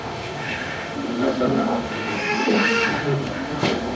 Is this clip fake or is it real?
fake